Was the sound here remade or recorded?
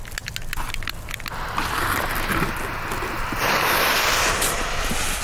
recorded